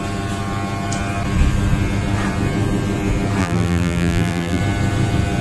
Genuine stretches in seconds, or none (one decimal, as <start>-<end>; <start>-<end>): 0.0-3.4; 4.6-5.4